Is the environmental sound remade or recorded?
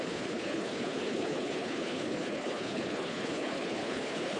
remade